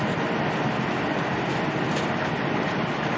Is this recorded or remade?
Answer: recorded